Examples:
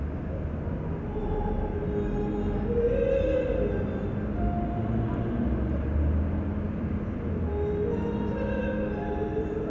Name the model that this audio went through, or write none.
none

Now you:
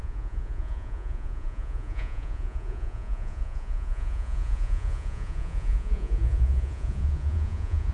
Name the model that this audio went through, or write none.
vocoder, Vocos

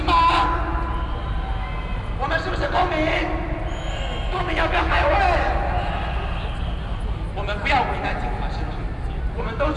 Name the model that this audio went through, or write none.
none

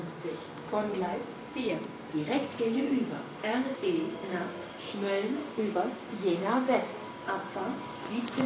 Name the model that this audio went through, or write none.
codec, DAC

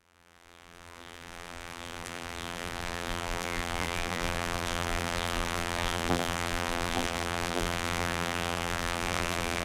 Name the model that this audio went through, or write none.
vocoder, BigVGAN v2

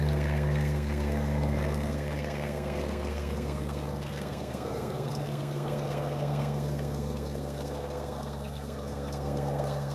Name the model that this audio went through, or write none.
codec, SNAC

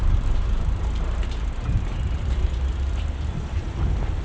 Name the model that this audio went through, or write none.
vocoder, BigVGAN v2